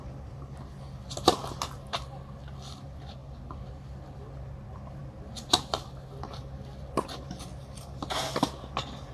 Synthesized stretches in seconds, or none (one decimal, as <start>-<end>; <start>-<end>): none